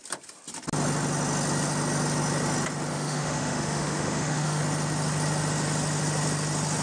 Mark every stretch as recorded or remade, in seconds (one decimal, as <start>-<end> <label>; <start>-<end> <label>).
0.0-2.9 recorded; 2.9-4.6 remade; 4.6-6.8 recorded